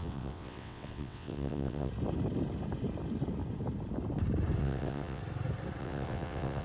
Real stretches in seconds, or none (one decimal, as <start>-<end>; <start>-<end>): 1.9-4.6; 5.2-5.8